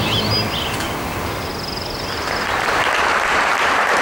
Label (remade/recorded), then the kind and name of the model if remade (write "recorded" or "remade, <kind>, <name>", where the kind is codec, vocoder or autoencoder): recorded